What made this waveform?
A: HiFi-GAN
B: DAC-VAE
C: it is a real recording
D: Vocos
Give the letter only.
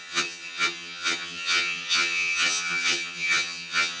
A